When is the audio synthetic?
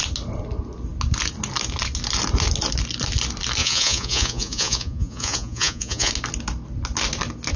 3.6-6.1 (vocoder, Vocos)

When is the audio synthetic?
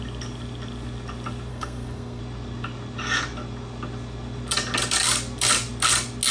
1.5-2.2 (codec, SNAC)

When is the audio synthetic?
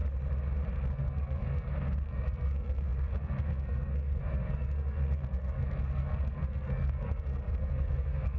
0.7-8.4 (codec, SNAC)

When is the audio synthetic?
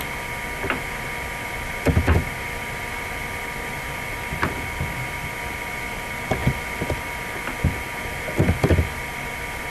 none